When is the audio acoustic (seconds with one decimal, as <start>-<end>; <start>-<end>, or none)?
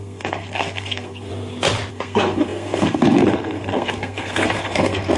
1.3-1.9